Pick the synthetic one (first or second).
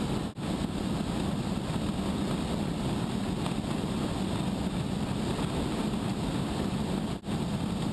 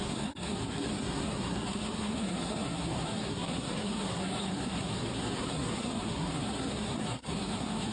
second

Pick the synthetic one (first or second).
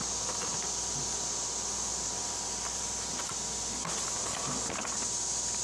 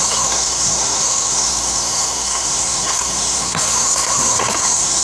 second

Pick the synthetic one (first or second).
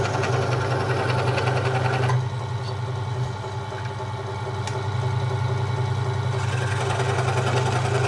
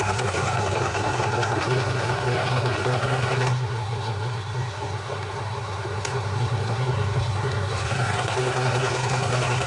second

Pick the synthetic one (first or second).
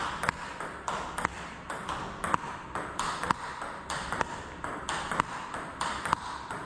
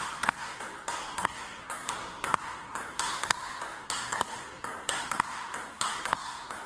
second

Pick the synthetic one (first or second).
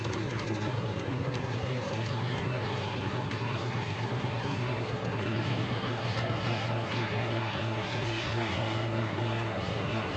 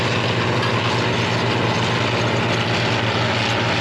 first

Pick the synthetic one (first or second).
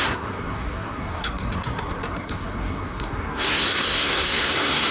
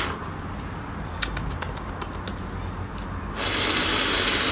first